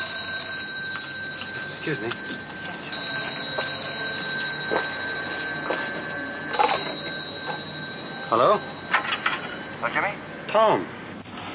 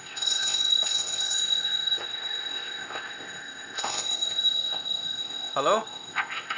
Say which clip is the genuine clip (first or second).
first